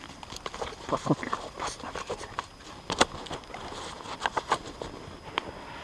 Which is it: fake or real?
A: real